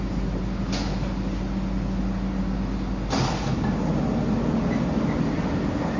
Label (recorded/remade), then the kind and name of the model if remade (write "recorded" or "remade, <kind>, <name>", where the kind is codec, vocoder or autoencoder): recorded